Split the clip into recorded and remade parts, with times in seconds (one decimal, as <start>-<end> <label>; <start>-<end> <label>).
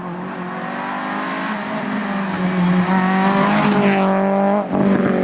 0.0-5.2 recorded